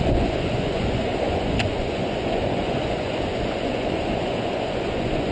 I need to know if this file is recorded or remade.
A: remade